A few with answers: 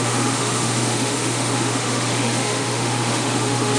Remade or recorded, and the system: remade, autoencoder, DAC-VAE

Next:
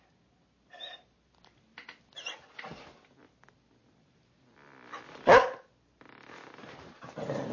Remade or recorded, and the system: recorded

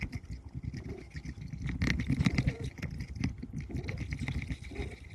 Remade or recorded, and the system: recorded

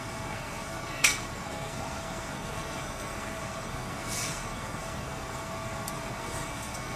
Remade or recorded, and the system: remade, codec, SNAC